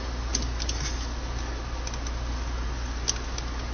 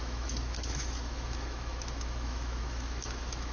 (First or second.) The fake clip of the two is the second